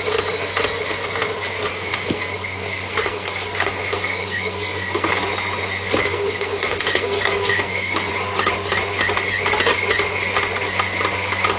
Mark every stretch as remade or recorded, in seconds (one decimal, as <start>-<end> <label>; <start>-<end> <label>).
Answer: 0.0-1.7 recorded; 1.7-5.2 remade; 5.2-6.0 recorded; 6.0-8.1 remade; 8.1-11.6 recorded